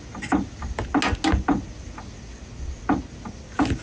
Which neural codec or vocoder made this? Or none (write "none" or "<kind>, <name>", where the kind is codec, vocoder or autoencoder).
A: none